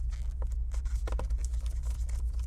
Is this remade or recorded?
recorded